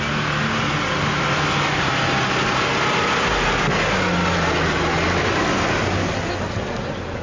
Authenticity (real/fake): real